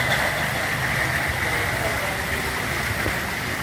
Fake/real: real